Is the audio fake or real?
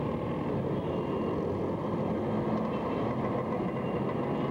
real